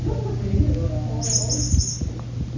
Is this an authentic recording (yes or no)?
yes